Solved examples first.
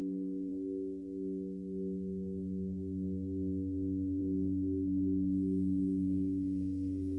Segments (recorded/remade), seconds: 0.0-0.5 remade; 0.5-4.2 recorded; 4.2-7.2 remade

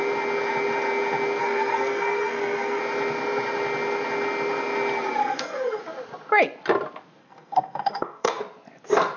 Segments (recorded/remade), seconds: 0.0-1.4 recorded; 1.4-2.8 remade; 2.8-5.2 recorded; 5.2-5.8 remade; 5.8-7.2 recorded; 7.2-8.4 remade; 8.4-9.2 recorded

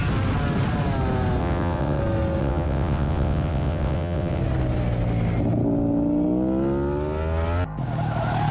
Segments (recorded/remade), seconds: 0.0-1.4 recorded; 1.4-2.0 remade; 2.0-2.4 recorded; 2.4-4.4 remade; 4.4-8.5 recorded